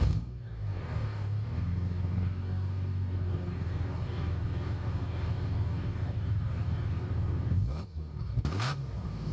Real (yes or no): no